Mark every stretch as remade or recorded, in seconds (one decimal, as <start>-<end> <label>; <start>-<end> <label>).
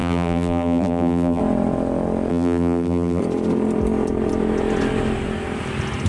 0.0-1.4 remade; 1.4-2.3 recorded; 2.3-3.2 remade; 3.2-6.1 recorded